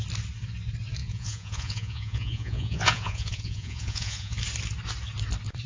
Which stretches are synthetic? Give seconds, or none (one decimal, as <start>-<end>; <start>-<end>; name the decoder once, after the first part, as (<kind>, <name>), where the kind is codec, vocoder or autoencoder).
1.0-4.4 (vocoder, Vocos)